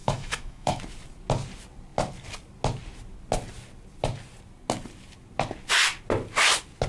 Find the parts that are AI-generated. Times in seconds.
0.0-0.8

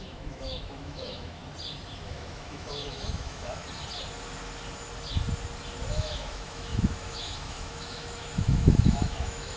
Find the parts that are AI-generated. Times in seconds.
0.0-1.4; 2.0-3.6; 5.9-9.6

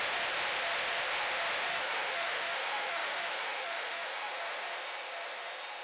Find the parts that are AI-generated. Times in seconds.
1.7-4.3

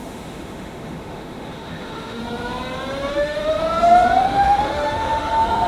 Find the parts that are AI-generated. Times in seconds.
0.0-2.2; 3.1-3.6; 4.2-5.7

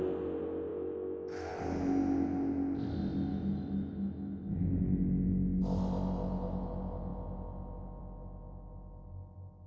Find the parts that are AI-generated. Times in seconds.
0.7-1.5; 3.3-5.6